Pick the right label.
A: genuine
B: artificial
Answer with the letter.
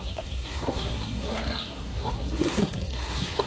B